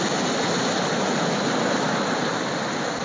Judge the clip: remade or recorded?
recorded